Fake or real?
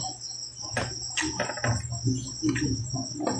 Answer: real